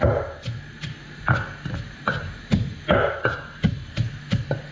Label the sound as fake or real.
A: real